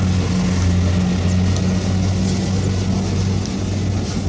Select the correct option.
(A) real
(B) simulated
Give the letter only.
A